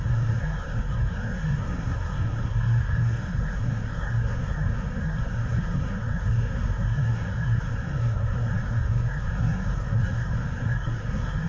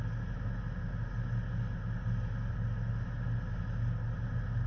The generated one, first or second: first